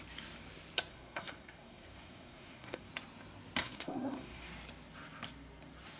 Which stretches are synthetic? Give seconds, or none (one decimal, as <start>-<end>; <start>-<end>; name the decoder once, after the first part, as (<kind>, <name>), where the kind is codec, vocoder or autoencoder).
0.9-2.9 (codec, SNAC); 3.6-4.5